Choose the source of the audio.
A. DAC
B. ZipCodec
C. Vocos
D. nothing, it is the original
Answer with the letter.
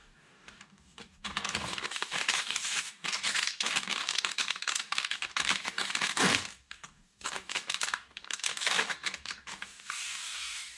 A